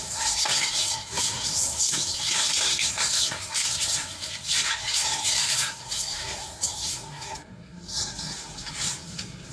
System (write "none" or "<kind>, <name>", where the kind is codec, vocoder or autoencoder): codec, SNAC